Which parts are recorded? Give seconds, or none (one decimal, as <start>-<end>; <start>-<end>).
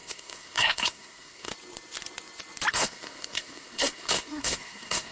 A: 1.5-2.7